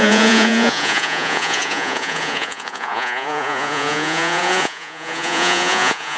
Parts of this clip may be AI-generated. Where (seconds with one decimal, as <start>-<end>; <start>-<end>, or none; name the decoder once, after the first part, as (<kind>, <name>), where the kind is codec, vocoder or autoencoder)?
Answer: 0.0-6.2 (vocoder, Vocos)